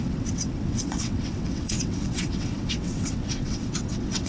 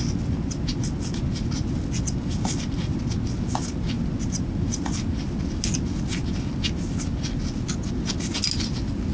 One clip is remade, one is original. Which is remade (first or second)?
first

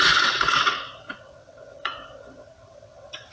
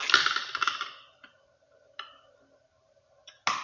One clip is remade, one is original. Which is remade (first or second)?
first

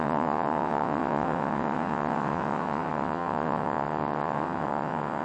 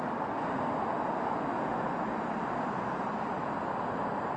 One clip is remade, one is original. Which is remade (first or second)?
first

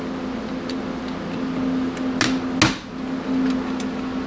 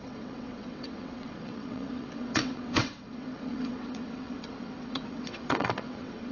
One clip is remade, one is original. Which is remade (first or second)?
second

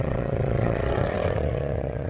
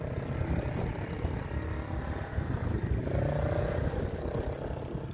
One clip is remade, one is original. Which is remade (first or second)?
first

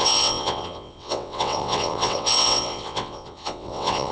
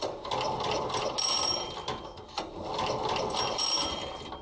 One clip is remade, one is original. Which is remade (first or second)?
first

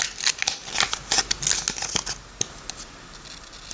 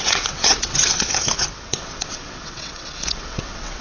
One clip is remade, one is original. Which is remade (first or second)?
second